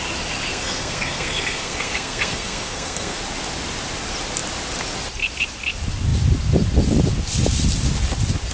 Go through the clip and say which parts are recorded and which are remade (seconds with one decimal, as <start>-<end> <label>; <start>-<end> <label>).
0.0-0.5 recorded; 0.5-3.2 remade; 3.2-8.5 recorded